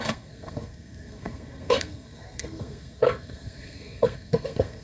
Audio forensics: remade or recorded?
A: remade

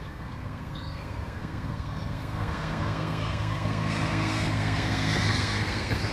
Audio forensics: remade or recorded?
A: remade